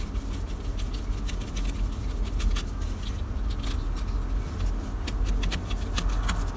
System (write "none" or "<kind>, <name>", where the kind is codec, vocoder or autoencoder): none